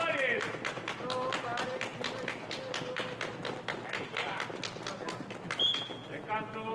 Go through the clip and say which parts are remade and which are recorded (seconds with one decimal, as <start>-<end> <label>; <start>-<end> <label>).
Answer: 0.0-0.5 recorded; 0.5-1.0 remade; 1.0-6.7 recorded